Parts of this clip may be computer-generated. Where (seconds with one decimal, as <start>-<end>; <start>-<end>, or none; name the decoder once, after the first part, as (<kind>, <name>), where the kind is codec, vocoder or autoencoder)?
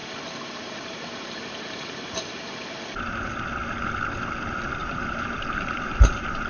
0.0-3.3 (vocoder, BigVGAN v2); 4.8-6.5